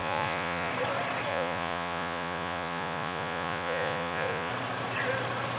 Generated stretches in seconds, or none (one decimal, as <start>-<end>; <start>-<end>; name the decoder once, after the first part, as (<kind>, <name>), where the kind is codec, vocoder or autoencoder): 0.0-0.7 (vocoder, Vocos); 1.3-4.5